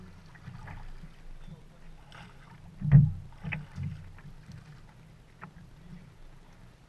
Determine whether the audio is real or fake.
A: real